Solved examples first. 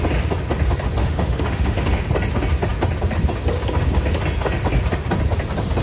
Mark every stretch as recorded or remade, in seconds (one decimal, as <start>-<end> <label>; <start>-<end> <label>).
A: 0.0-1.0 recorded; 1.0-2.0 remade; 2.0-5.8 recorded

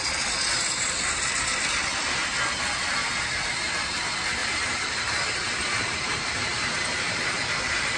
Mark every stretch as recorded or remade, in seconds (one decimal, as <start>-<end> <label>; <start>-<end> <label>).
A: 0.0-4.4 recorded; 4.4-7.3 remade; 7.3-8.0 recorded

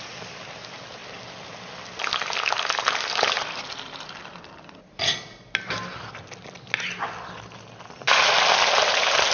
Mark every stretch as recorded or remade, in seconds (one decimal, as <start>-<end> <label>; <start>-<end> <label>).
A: 0.0-9.3 recorded